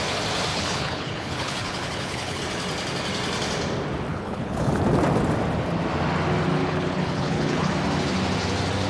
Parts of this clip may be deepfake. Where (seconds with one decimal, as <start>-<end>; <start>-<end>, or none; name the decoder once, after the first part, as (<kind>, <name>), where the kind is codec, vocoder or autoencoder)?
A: 0.5-2.4 (codec, HILCodec); 4.1-4.7; 6.6-7.7